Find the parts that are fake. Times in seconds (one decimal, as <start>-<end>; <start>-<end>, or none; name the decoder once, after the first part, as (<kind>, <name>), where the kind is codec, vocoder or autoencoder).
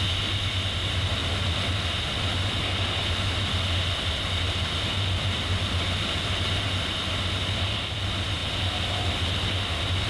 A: none